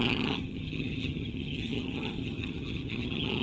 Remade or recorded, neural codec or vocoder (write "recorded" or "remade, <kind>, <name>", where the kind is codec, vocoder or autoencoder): remade, vocoder, HiFi-GAN